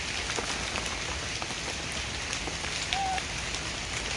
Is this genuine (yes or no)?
yes